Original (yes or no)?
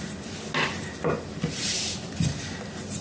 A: yes